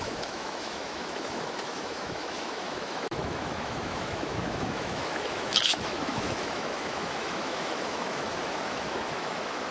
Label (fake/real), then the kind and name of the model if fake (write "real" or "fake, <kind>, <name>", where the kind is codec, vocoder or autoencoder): fake, autoencoder, DAC-VAE